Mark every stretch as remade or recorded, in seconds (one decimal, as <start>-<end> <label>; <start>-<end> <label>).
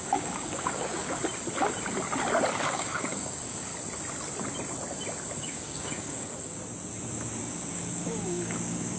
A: 0.0-1.2 remade; 1.2-2.5 recorded; 2.5-3.7 remade; 3.7-5.4 recorded; 5.4-6.6 remade; 6.6-7.4 recorded; 7.4-9.0 remade